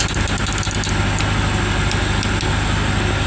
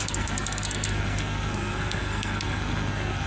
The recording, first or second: first